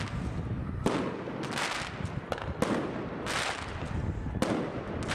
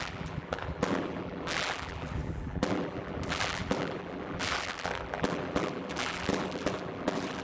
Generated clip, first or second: second